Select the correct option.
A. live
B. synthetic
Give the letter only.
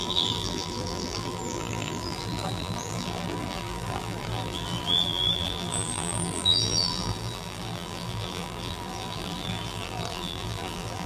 B